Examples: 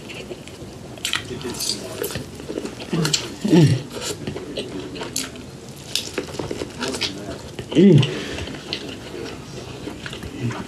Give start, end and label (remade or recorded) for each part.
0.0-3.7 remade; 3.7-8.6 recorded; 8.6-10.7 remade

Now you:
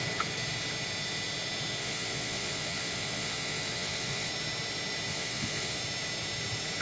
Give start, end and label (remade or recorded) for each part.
0.0-1.8 recorded; 1.8-4.3 remade; 4.3-5.1 recorded; 5.1-5.8 remade; 5.8-6.8 recorded

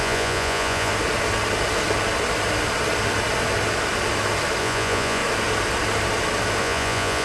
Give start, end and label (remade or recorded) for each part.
0.0-0.9 remade; 0.9-4.6 recorded; 4.6-5.2 remade; 5.2-6.6 recorded; 6.6-7.2 remade

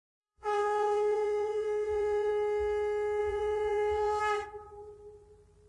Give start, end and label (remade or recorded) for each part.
0.0-2.3 remade; 2.3-3.2 recorded; 3.2-4.2 remade; 4.2-5.7 recorded